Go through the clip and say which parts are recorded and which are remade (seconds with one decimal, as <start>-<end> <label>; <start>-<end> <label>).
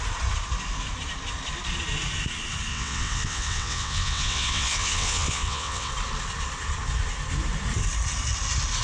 0.0-2.7 recorded; 2.7-5.9 remade; 5.9-8.8 recorded